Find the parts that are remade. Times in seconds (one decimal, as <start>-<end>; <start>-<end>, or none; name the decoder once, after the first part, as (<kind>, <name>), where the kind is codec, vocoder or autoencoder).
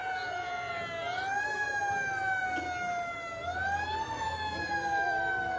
0.0-0.7 (vocoder, Vocos)